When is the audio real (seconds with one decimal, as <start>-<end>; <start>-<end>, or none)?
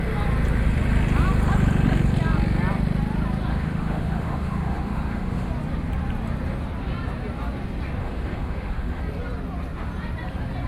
0.0-3.5; 5.5-8.0; 9.0-10.7